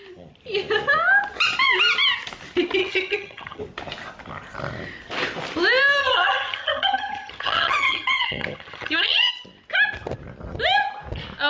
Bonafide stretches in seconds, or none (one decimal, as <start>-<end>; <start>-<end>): 0.0-2.8; 3.6-6.0; 9.3-11.5